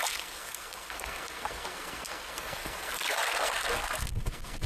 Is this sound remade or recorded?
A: remade